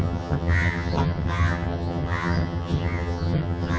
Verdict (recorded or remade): remade